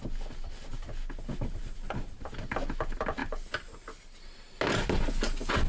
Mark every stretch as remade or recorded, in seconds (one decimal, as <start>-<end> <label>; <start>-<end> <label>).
0.0-5.7 recorded